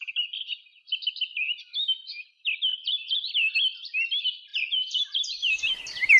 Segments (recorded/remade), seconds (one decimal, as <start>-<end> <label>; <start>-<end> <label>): 0.0-2.7 recorded; 2.7-3.3 remade; 3.3-4.5 recorded; 4.5-5.8 remade; 5.8-6.2 recorded